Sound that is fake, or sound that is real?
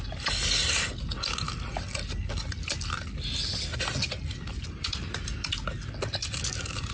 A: real